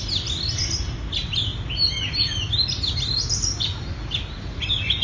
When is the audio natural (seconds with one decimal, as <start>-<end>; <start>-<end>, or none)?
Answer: 0.0-5.0